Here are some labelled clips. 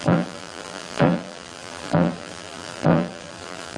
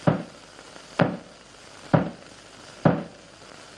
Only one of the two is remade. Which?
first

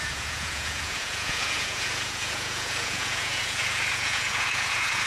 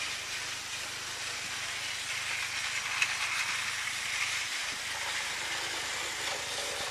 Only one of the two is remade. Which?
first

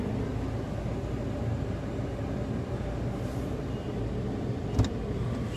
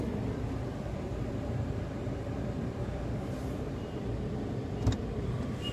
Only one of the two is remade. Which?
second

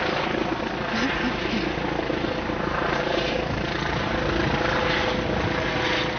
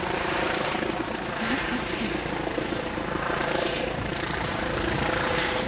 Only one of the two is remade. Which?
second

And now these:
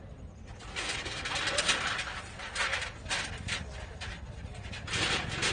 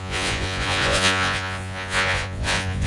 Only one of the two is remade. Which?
second